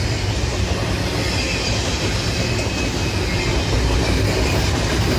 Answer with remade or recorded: recorded